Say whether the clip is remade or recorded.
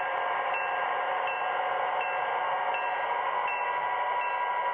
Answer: recorded